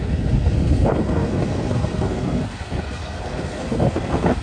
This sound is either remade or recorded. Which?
remade